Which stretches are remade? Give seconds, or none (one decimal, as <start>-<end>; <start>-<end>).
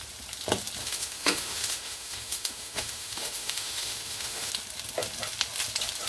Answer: 0.8-4.5